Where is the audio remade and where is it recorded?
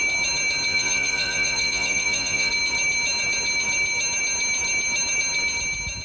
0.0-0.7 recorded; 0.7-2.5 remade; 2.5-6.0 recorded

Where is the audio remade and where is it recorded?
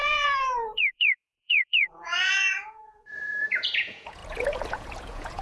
0.0-5.4 remade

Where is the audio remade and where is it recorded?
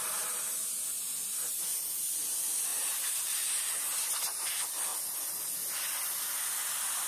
0.0-2.7 recorded; 2.7-3.5 remade; 3.5-7.1 recorded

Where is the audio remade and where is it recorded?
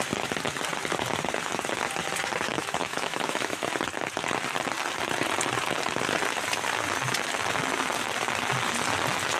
0.0-2.5 recorded; 2.5-3.6 remade; 3.6-9.4 recorded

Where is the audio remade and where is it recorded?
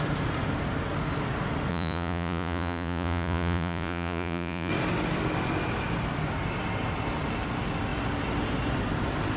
0.0-1.7 recorded; 1.7-4.7 remade; 4.7-9.4 recorded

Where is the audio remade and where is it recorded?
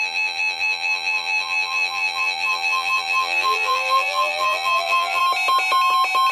0.0-5.2 remade; 5.2-6.3 recorded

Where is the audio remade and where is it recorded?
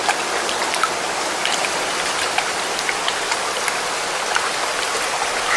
0.0-5.6 recorded